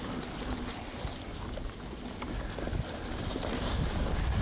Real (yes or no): yes